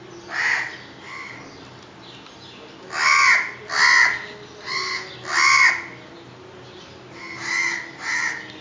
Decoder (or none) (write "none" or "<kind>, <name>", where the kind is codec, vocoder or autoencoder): none